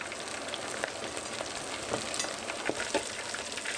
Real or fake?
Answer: real